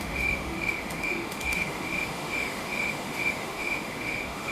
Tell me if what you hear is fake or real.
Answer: fake